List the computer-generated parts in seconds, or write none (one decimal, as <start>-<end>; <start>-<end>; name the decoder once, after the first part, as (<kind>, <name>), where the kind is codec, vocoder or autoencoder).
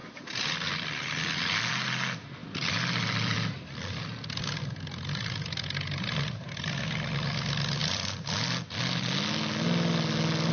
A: 2.4-6.8 (vocoder, BigVGAN v2); 7.8-8.8